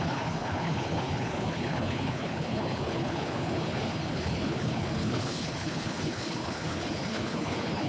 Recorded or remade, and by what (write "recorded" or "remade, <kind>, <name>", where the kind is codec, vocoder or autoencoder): remade, codec, HILCodec